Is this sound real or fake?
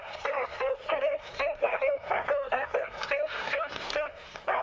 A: fake